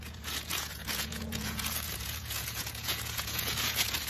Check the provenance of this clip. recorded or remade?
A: remade